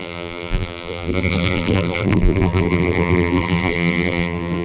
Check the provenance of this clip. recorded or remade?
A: remade